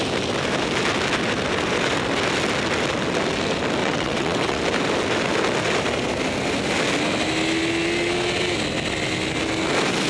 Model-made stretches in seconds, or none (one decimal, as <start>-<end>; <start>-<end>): 3.8-4.6

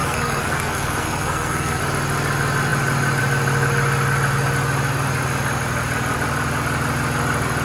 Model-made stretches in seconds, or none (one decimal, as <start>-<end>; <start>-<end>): 0.0-1.8

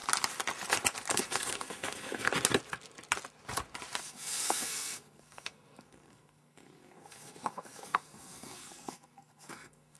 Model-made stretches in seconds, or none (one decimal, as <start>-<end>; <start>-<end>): 1.1-2.3; 4.0-10.0

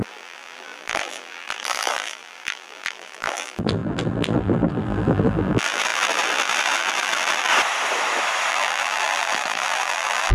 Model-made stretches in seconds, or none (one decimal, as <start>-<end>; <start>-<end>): 0.0-7.5; 8.5-10.3

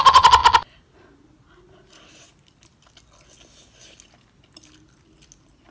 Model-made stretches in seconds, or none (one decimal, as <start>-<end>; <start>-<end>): none

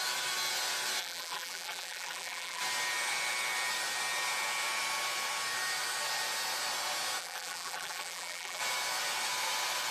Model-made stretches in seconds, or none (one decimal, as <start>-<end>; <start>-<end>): 1.0-2.6; 7.2-8.6

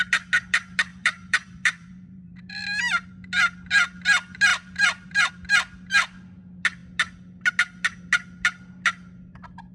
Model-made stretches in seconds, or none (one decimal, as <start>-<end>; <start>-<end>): 0.9-2.3; 4.5-5.3